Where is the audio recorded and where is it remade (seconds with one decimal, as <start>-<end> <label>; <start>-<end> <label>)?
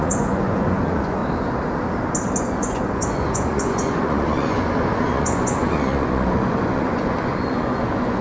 0.0-1.2 remade; 1.2-2.4 recorded; 2.4-8.2 remade